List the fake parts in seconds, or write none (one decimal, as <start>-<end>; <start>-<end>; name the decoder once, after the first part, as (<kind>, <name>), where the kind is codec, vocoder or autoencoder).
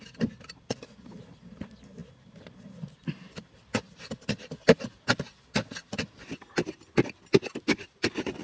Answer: none